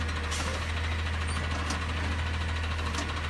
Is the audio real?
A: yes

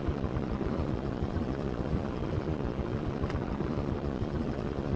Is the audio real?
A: no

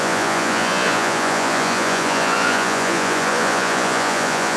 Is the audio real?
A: no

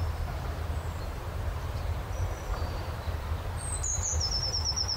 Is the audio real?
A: no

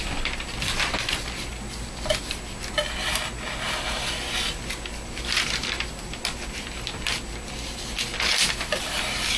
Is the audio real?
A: yes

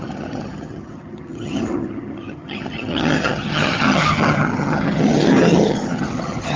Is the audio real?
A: no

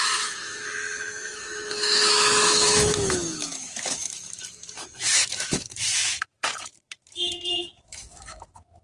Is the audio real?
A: no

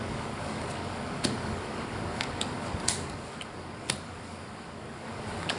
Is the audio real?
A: no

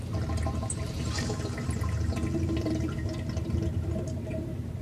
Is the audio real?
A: no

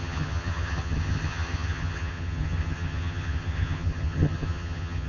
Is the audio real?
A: no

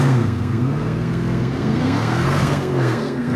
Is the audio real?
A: no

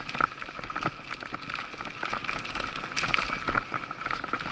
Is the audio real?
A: yes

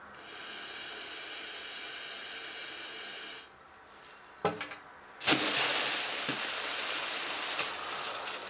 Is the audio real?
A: yes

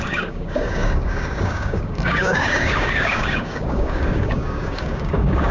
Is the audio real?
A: no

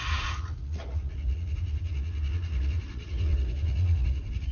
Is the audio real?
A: no